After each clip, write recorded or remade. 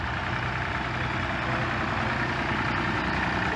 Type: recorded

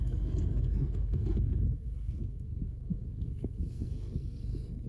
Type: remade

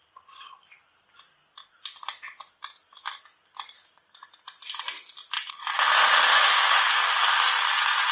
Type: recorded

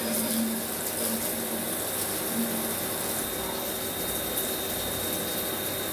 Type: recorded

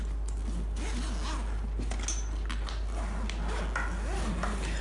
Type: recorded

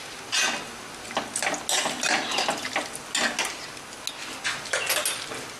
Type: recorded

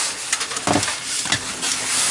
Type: recorded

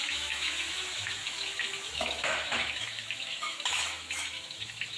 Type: remade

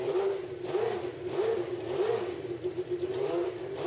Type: recorded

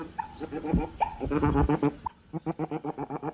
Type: recorded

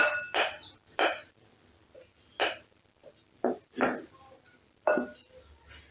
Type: recorded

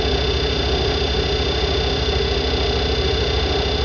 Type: recorded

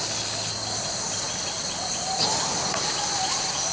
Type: recorded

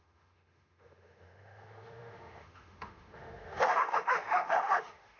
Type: remade